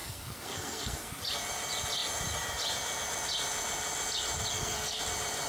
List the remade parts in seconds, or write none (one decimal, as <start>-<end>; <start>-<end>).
0.0-1.2; 4.5-5.0